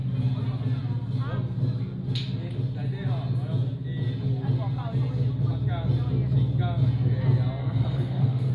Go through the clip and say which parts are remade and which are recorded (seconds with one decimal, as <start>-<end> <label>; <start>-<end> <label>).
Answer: 0.0-7.6 recorded; 7.6-8.5 remade